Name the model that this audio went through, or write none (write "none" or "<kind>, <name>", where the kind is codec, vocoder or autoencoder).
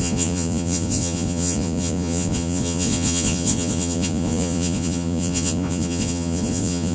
vocoder, Vocos